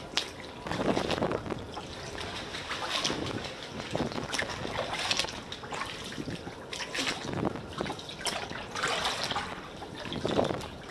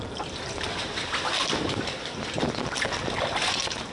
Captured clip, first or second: first